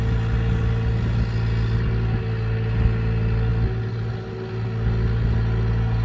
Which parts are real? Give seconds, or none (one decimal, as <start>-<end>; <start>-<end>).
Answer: 0.0-6.0

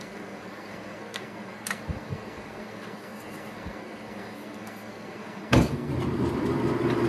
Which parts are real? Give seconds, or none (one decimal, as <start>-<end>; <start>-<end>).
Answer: 5.9-7.1

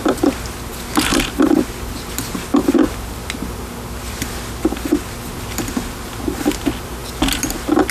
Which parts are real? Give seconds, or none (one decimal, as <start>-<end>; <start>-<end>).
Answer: 0.0-1.1; 1.9-7.0

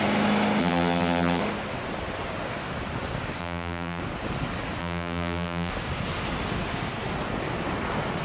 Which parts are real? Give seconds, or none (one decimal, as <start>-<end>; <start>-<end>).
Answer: 0.0-0.6; 1.4-3.4; 4.0-4.8; 5.7-8.2

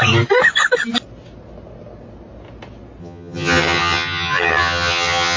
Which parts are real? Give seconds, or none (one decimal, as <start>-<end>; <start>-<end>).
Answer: 0.0-3.0

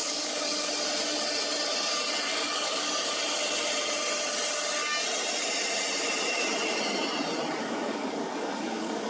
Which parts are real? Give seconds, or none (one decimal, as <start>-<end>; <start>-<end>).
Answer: 0.7-2.3; 2.9-7.6

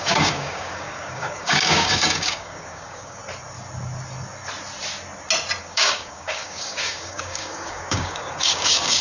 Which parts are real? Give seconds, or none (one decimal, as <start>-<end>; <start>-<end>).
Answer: 3.2-5.6

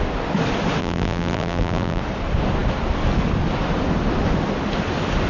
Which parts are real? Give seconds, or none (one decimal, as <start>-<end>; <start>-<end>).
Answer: 0.0-0.8; 2.0-5.3